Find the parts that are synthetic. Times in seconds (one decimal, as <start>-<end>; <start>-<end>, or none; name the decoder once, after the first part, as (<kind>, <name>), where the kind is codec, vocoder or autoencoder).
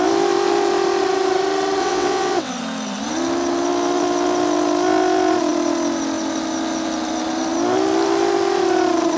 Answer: 1.8-2.5 (vocoder, WaveNeXt)